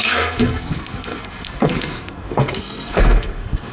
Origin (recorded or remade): remade